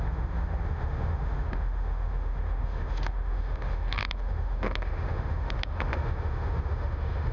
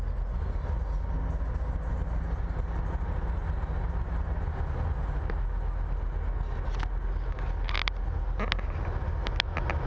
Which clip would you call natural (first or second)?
second